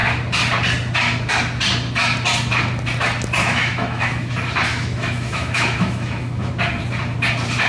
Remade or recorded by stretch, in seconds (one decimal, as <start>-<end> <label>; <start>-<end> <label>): 0.0-3.4 recorded; 3.4-4.3 remade; 4.3-4.7 recorded; 4.7-6.5 remade; 6.5-7.7 recorded